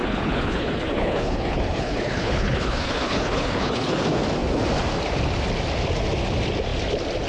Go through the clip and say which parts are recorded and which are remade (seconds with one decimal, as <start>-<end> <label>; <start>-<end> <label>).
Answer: 0.0-4.0 remade; 4.0-7.3 recorded